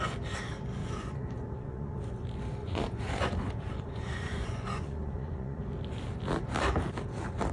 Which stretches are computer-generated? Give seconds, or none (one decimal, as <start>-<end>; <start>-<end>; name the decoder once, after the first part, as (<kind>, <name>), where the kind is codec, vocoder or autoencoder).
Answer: 0.8-2.0 (vocoder, Vocos); 2.6-5.6